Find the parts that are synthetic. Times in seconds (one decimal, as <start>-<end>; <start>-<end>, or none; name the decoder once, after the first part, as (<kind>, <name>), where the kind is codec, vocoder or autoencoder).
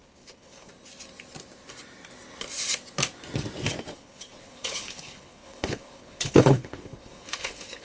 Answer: 0.0-0.7 (codec, HILCodec); 3.9-7.8